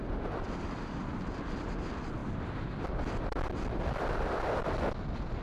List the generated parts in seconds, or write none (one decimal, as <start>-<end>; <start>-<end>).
none